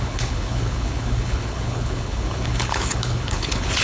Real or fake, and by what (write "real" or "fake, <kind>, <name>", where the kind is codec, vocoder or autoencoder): fake, codec, HILCodec